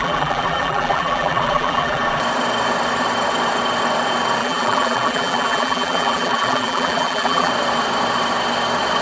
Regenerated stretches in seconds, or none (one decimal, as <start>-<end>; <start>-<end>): 0.0-2.0; 4.4-7.5